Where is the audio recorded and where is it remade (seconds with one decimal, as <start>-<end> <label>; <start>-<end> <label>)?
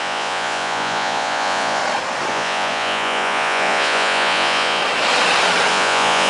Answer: 0.0-1.8 remade; 1.8-2.3 recorded; 2.3-4.8 remade; 4.8-5.7 recorded; 5.7-6.3 remade